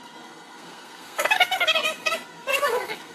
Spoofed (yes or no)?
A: yes